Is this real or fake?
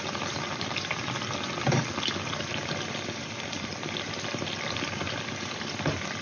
real